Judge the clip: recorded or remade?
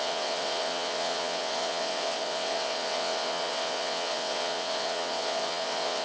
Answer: remade